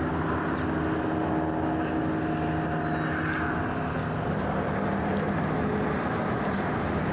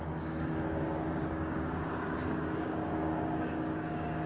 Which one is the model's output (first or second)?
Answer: second